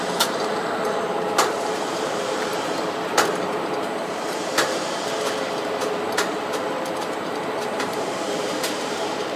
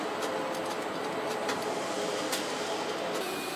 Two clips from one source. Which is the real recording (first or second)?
second